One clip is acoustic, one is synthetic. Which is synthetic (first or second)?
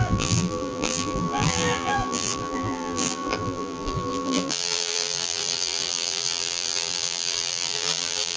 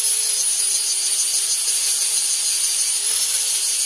first